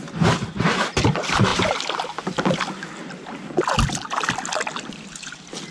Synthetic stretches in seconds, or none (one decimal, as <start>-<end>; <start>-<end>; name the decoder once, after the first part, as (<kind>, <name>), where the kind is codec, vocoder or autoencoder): none